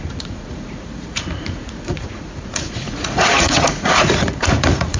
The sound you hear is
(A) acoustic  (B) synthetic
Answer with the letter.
B